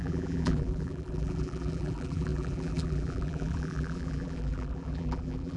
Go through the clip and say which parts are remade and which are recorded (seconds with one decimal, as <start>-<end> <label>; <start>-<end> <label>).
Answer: 0.0-5.6 remade